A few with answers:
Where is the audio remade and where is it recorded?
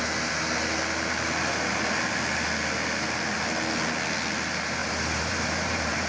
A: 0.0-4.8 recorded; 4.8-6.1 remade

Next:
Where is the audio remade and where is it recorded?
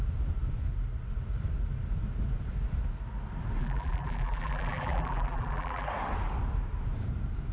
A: 0.0-3.6 recorded; 3.6-5.9 remade; 5.9-7.5 recorded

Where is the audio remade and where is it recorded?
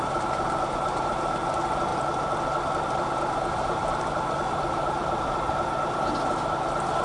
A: 0.0-1.9 remade; 1.9-2.6 recorded; 2.6-5.0 remade; 5.0-6.5 recorded; 6.5-7.0 remade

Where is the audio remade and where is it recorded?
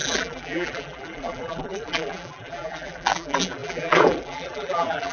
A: 0.0-5.1 remade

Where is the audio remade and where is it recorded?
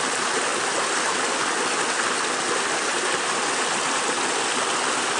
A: 0.0-5.2 recorded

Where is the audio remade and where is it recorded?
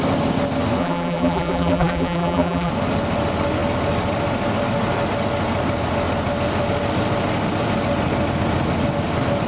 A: 0.0-0.8 recorded; 0.8-2.7 remade; 2.7-9.5 recorded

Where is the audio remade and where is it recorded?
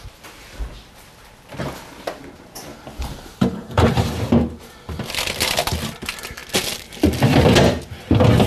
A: 0.0-2.7 recorded; 2.7-4.1 remade; 4.1-8.5 recorded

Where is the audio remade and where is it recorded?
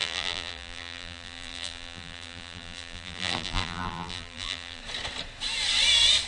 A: 0.0-4.8 remade; 4.8-6.3 recorded